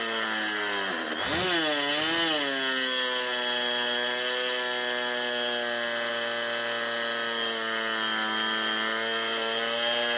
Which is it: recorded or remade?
recorded